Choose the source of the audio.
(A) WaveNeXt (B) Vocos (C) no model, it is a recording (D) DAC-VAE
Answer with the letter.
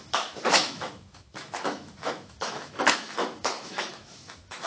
D